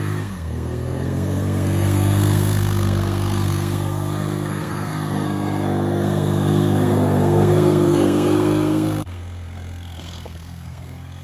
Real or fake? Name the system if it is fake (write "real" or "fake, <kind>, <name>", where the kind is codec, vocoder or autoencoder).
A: fake, codec, SNAC